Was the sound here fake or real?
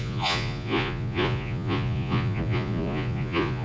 fake